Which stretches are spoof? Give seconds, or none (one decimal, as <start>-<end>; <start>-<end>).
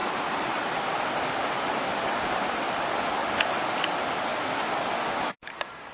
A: 0.0-3.2; 3.7-4.3; 5.5-5.9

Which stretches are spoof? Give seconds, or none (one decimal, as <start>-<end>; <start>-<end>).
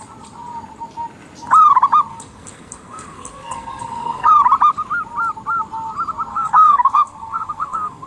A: 2.1-4.3; 6.3-8.1